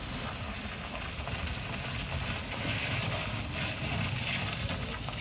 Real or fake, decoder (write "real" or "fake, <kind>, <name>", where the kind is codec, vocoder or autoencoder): real